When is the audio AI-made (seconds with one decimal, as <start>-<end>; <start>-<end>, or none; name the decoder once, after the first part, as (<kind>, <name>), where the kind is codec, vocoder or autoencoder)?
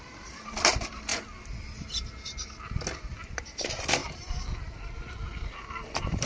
0.0-1.1 (vocoder, BigVGAN v2); 3.4-6.3